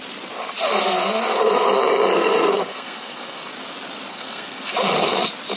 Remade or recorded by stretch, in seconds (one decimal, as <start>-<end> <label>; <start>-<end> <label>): 0.0-0.8 recorded; 0.8-1.7 remade; 1.7-2.1 recorded; 2.1-3.5 remade; 3.5-4.1 recorded; 4.1-4.7 remade; 4.7-5.6 recorded